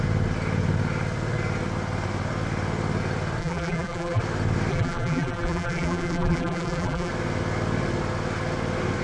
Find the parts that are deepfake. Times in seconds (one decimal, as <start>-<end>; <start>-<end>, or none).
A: 3.4-4.2; 4.7-7.1